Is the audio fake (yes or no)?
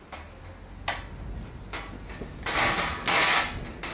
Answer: no